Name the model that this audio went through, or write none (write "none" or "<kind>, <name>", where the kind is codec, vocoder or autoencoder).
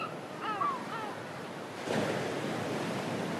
none